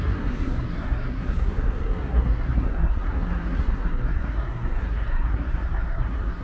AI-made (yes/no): yes